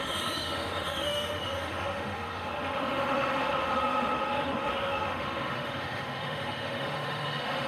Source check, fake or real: fake